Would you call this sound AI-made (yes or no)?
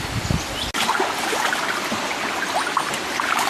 no